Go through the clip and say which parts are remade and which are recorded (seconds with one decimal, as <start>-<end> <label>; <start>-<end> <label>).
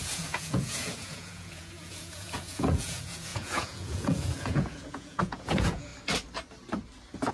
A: 0.0-5.9 remade; 5.9-7.3 recorded